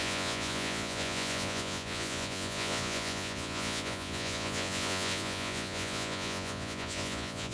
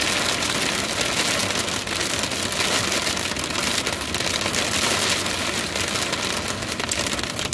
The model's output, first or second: first